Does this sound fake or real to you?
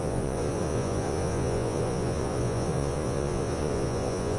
fake